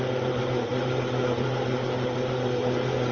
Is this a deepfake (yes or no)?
no